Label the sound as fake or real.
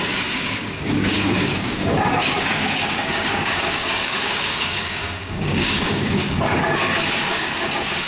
fake